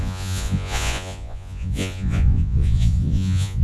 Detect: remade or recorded remade